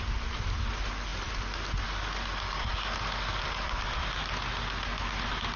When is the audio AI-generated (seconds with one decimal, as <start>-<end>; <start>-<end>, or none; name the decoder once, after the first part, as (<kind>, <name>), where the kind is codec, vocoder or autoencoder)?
none